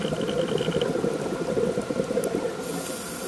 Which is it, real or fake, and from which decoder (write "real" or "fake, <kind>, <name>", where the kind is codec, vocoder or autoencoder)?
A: real